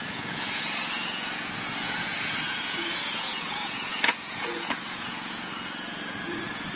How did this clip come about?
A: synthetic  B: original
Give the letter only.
A